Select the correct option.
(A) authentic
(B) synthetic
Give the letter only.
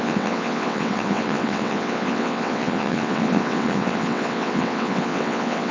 B